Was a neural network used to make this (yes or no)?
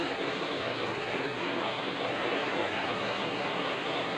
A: yes